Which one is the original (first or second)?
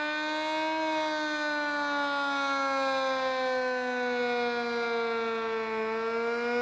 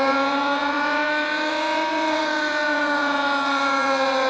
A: first